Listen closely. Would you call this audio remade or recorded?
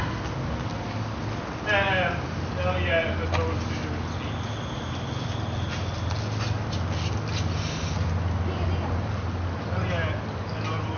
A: recorded